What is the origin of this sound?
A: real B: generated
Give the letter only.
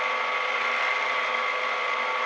A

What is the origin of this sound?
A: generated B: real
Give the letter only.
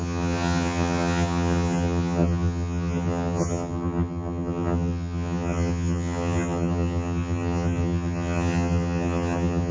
A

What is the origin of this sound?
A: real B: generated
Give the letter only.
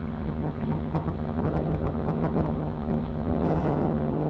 B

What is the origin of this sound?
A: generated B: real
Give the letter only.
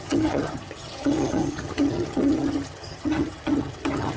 A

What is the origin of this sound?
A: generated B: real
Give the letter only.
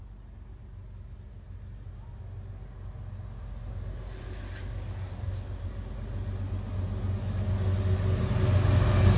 B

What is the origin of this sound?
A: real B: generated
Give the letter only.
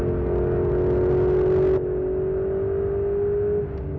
A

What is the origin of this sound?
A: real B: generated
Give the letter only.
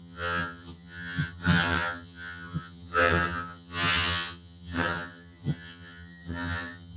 B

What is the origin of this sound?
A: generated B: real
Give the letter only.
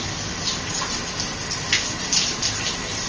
B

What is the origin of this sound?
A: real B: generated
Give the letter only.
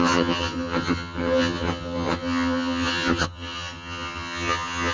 B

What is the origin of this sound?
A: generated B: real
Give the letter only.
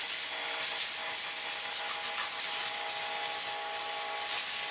B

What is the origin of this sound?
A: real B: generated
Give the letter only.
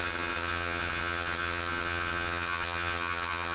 B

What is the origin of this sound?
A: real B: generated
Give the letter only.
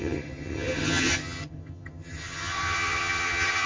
B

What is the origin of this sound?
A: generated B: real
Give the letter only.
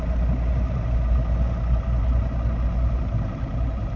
B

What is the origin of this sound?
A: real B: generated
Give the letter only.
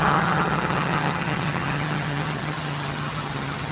B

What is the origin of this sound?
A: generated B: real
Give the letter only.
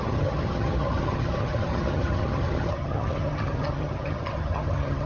A